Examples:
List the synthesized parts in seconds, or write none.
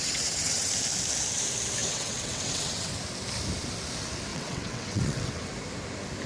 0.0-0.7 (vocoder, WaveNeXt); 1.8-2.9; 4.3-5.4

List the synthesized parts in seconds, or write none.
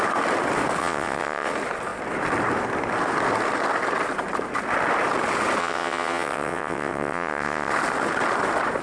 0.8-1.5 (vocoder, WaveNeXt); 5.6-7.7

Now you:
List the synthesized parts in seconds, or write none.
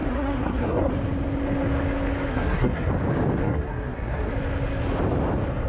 0.0-0.9 (codec, SNAC); 2.3-2.9; 3.4-4.3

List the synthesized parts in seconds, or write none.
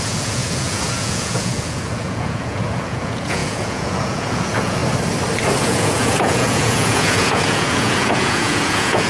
0.0-4.8 (vocoder, Vocos); 5.6-9.1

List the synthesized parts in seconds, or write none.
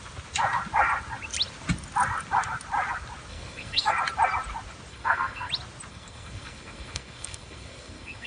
3.3-3.9 (codec, SNAC); 4.9-5.5; 5.9-8.3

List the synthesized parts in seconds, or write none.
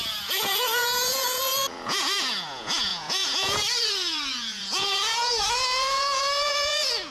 0.0-7.1 (vocoder, Vocos)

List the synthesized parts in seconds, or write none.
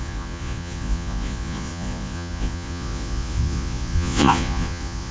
0.0-5.1 (vocoder, Vocos)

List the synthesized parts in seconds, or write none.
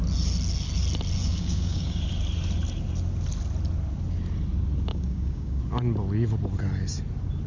1.2-2.0 (codec, DAC); 4.9-5.6